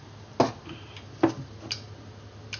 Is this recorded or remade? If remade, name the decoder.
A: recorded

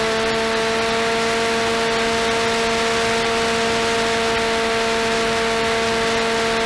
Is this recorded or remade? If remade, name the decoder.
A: recorded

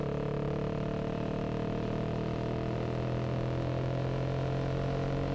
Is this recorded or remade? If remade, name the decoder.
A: recorded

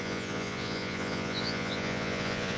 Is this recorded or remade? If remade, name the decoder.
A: remade, vocoder, Vocos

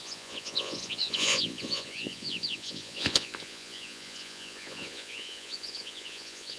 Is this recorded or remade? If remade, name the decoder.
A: remade, vocoder, Vocos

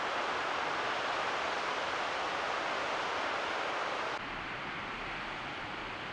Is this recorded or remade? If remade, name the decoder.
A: recorded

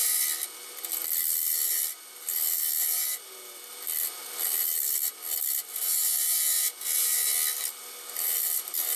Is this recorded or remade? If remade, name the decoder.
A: recorded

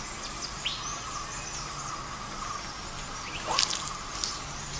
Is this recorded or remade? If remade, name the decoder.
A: recorded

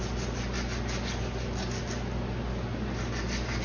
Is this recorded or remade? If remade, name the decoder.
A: recorded